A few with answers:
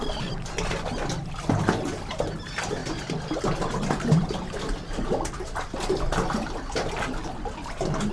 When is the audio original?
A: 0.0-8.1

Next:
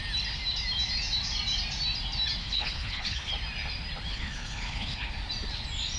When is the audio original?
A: 0.0-2.4; 3.3-4.1; 5.1-6.0

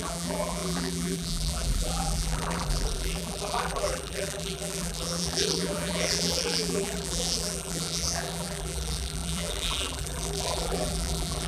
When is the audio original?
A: none

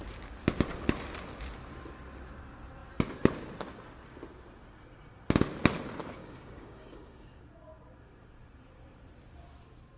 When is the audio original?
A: 0.0-6.2; 7.4-10.0

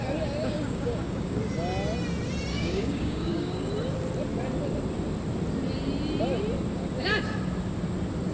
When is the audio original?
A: 0.0-0.4; 1.4-2.5; 3.7-8.3

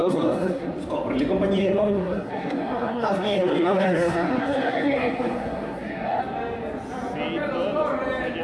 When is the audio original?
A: 0.7-1.6; 6.2-8.4